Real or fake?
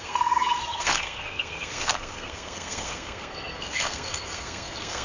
fake